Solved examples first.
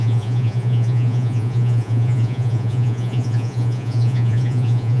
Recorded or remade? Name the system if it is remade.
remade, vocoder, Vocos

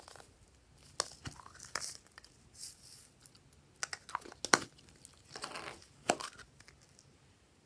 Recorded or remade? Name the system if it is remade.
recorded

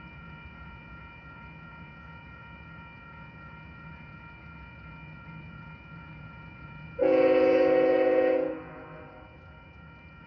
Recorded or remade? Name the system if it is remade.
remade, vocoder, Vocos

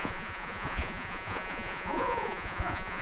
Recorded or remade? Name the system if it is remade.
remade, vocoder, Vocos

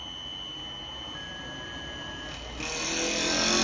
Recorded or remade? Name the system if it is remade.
recorded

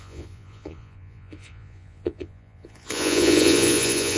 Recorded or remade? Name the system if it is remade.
remade, vocoder, Vocos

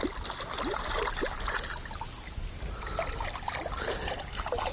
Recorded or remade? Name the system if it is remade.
recorded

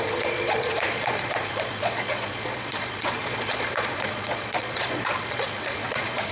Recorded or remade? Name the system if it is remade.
remade, vocoder, Vocos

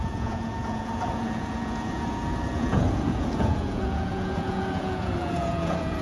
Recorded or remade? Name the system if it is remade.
remade, vocoder, Vocos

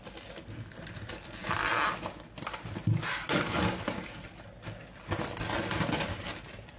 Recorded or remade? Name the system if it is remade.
recorded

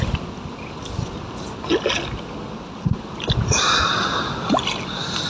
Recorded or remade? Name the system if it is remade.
recorded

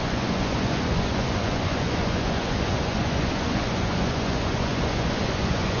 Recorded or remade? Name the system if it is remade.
remade, vocoder, Vocos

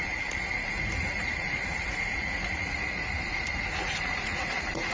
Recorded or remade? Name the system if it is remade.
remade, vocoder, Vocos